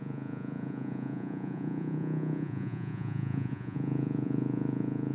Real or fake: fake